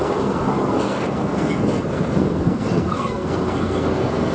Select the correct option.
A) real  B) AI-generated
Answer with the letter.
B